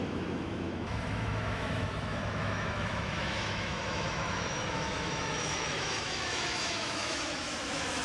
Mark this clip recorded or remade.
remade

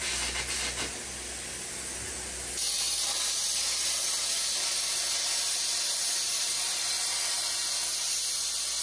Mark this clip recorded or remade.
recorded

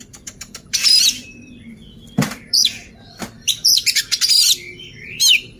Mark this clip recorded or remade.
remade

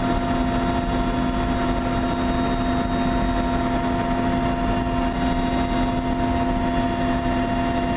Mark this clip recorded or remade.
recorded